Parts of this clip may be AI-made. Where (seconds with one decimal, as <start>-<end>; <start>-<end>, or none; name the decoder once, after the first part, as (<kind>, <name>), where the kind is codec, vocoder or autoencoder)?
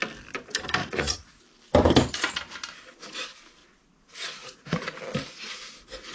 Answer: 0.8-1.4 (vocoder, Vocos); 3.6-4.9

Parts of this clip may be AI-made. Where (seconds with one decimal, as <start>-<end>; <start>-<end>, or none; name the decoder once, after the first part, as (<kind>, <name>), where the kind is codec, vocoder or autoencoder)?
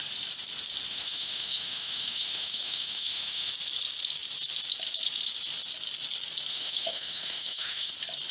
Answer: 0.9-3.5 (autoencoder, DAC-VAE); 6.5-7.9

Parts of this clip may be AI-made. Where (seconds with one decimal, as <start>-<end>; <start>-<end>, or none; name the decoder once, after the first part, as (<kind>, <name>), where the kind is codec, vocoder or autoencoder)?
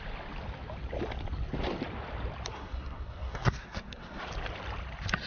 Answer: 2.5-4.2 (codec, SNAC)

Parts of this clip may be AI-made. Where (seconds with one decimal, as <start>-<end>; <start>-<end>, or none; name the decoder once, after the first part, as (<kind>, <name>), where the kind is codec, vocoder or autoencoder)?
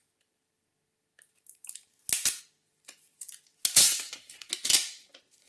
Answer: 3.8-4.5 (codec, SNAC)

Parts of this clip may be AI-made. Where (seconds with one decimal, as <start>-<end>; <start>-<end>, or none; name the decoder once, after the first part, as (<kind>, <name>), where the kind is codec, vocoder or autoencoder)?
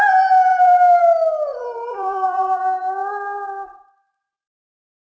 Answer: 0.5-1.0 (vocoder, BigVGAN v2); 1.5-2.6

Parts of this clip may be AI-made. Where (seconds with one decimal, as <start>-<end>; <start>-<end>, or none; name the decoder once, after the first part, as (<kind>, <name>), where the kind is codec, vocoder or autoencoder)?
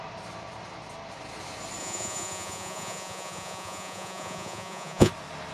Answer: 1.8-5.1 (vocoder, Vocos)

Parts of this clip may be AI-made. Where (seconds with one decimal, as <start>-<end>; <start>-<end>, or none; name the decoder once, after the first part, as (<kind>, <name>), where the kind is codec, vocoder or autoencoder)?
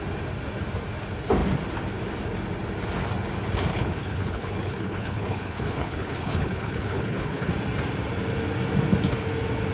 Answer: 3.7-7.5 (codec, HILCodec)